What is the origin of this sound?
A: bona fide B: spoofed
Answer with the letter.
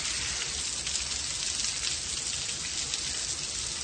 A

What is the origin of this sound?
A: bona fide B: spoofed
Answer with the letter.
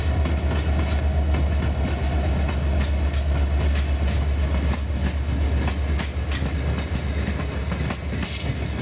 A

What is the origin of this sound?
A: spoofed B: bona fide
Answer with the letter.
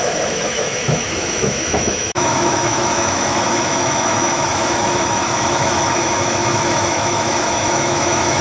A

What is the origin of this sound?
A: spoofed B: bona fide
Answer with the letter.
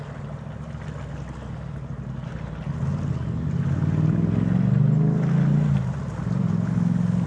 B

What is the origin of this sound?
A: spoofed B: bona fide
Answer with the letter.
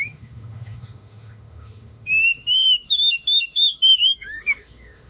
A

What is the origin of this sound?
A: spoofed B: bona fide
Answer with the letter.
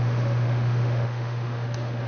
A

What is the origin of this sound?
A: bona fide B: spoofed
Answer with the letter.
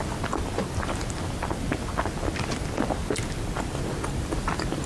A